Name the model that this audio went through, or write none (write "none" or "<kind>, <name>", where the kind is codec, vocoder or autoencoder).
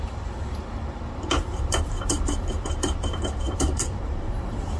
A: vocoder, BigVGAN v2